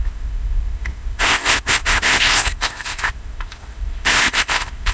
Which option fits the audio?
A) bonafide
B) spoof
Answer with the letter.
B